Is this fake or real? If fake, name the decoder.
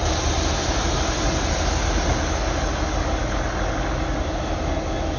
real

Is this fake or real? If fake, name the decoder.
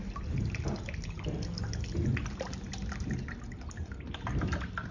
real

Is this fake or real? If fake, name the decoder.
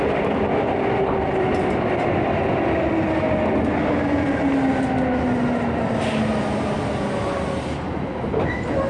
real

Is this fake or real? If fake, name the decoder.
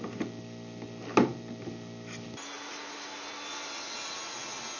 real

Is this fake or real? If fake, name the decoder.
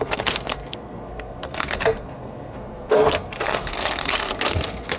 fake, codec, SNAC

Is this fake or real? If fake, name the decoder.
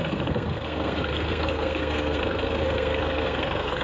fake, codec, SNAC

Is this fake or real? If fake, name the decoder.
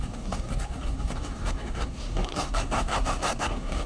fake, codec, SNAC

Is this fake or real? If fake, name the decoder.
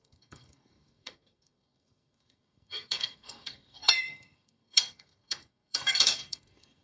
fake, codec, SNAC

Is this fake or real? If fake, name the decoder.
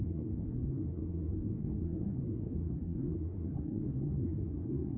fake, codec, SNAC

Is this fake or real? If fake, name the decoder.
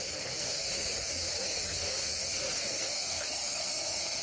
fake, codec, SNAC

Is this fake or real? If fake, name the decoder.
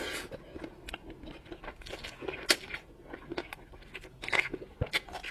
real